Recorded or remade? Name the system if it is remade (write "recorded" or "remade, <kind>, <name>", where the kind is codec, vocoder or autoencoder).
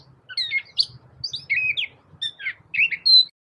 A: recorded